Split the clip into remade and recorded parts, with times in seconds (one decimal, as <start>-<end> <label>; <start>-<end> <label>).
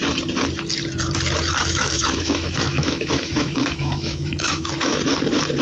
0.0-1.6 recorded; 1.6-5.0 remade; 5.0-5.6 recorded